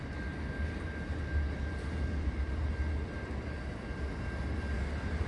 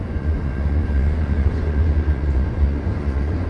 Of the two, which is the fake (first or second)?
second